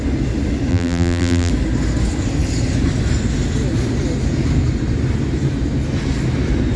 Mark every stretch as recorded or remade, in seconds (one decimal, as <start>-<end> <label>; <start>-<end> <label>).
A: 0.0-0.7 recorded; 0.7-1.5 remade; 1.5-6.8 recorded